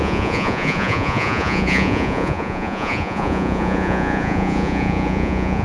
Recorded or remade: remade